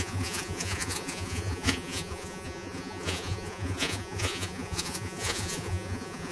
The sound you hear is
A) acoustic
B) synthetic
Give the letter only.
B